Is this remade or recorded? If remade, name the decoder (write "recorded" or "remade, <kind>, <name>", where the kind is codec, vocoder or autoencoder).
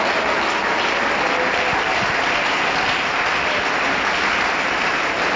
recorded